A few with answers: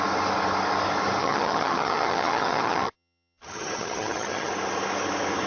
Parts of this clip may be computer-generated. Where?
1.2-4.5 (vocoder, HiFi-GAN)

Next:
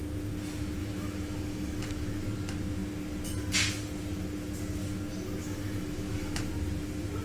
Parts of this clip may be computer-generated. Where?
0.8-2.1 (autoencoder, DAC-VAE); 5.4-6.4

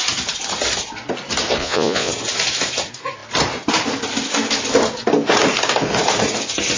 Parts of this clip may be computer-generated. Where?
1.6-2.1 (vocoder, Vocos)

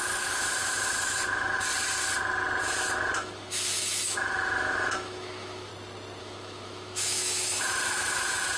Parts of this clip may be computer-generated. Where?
0.0-1.7 (autoencoder, DAC-VAE); 2.6-5.7; 6.2-8.6